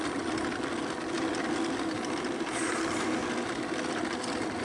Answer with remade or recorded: recorded